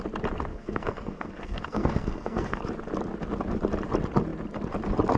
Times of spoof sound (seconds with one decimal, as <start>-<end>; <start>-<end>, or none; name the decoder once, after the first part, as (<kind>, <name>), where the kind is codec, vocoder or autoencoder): 0.5-2.6 (codec, SNAC)

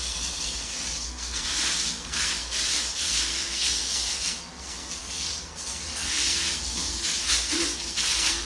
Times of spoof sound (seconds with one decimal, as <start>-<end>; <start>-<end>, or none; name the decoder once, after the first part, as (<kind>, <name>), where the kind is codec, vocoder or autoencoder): 0.0-8.4 (codec, SNAC)

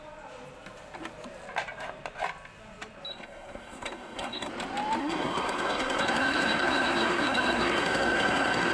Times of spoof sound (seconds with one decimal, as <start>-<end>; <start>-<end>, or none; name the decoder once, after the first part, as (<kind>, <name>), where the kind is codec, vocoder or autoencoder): 3.1-4.5 (codec, SNAC); 5.0-8.7

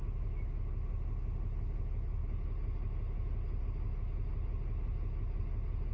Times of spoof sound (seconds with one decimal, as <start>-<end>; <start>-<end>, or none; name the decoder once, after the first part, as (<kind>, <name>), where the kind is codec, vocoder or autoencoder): none

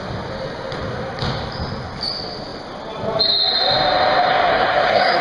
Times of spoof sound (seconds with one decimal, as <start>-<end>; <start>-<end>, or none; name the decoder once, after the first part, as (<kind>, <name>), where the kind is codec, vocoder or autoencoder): 4.5-5.2 (codec, SNAC)